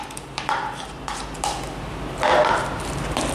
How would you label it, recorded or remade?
recorded